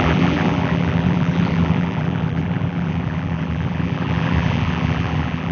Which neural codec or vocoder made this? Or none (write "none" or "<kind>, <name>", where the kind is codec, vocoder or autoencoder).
vocoder, BigVGAN v2